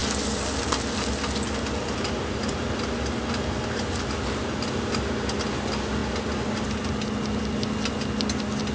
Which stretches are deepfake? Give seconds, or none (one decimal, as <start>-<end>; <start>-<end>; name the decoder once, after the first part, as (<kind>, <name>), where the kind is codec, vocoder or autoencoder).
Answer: none